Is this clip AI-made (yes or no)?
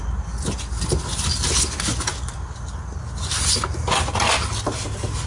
no